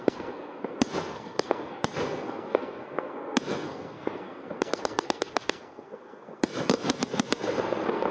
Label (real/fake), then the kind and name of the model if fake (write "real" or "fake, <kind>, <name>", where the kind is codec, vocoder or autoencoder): fake, codec, SNAC